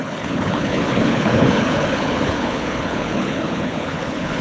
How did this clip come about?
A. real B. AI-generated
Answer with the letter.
B